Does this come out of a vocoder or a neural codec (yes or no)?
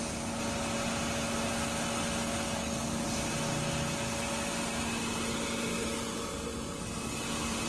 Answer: no